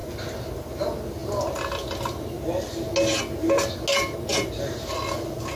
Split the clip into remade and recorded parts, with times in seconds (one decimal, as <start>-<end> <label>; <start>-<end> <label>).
0.0-5.6 recorded